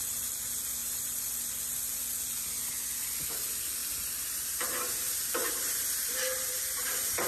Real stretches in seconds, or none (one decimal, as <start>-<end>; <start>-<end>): 0.0-3.8